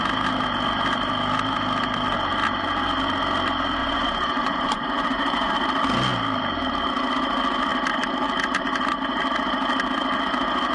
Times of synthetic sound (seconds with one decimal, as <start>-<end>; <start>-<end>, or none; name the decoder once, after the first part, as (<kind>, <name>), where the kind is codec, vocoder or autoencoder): 3.8-5.5 (vocoder, Vocos)